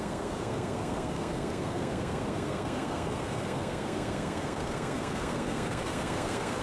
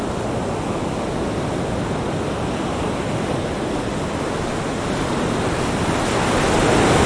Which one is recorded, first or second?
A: second